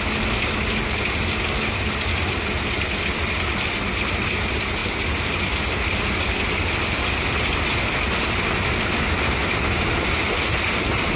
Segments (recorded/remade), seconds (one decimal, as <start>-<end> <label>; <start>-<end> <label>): 0.0-11.2 recorded